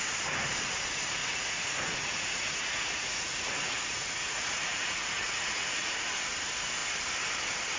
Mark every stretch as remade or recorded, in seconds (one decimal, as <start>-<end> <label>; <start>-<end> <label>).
0.0-1.2 recorded; 1.2-5.9 remade; 5.9-7.8 recorded